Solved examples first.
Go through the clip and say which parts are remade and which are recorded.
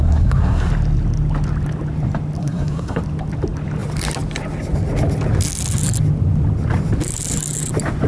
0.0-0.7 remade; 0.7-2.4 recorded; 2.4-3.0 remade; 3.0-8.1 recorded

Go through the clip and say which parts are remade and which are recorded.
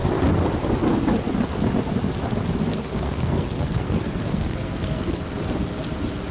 0.0-2.7 recorded; 2.7-5.2 remade; 5.2-6.3 recorded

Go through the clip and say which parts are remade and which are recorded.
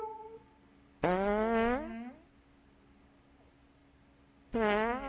0.0-5.1 recorded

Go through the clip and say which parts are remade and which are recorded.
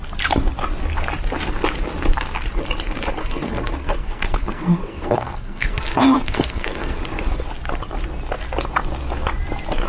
0.0-3.2 recorded; 3.2-7.0 remade; 7.0-9.9 recorded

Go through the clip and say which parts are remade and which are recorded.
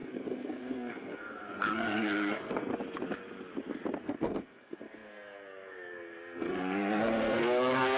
0.0-2.7 remade; 2.7-4.0 recorded; 4.0-8.0 remade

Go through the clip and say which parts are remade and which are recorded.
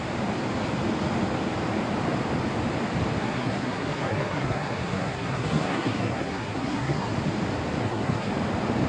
0.0-3.2 recorded; 3.2-7.1 remade; 7.1-7.8 recorded; 7.8-8.3 remade; 8.3-8.9 recorded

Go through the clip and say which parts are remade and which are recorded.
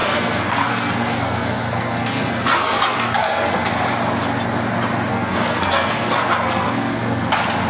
0.0-3.7 remade; 3.7-5.1 recorded; 5.1-7.3 remade; 7.3-7.7 recorded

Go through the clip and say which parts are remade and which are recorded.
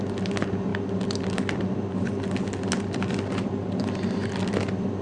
0.0-5.0 recorded